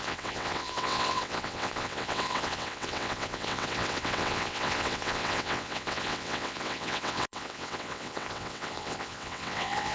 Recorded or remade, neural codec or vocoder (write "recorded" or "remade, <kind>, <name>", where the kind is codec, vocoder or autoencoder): remade, vocoder, WaveNeXt